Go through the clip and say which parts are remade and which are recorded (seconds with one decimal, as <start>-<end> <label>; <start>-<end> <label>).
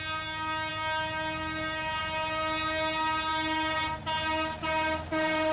0.0-5.5 recorded